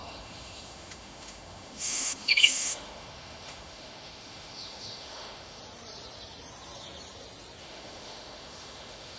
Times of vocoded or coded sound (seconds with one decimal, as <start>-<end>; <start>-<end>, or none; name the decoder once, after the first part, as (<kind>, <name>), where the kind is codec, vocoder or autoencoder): 0.0-5.6 (autoencoder, DAC-VAE); 7.6-9.2